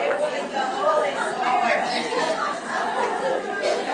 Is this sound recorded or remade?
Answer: remade